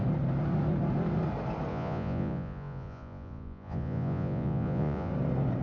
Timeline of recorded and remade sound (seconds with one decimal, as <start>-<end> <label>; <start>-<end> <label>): 0.0-1.7 recorded; 1.7-5.1 remade; 5.1-5.6 recorded